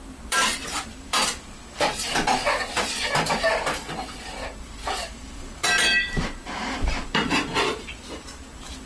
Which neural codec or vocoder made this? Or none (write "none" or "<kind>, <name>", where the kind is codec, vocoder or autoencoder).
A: vocoder, BigVGAN v2